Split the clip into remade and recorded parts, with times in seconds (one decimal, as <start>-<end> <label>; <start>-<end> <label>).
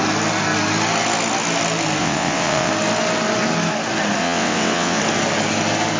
0.0-2.0 recorded; 2.0-2.7 remade; 2.7-4.2 recorded; 4.2-5.0 remade; 5.0-6.0 recorded